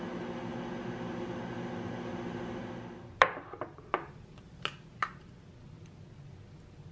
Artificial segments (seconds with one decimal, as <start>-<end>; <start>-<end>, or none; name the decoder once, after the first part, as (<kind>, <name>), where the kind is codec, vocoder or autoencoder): none